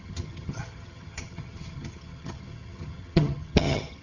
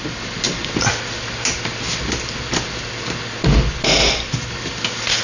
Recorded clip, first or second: second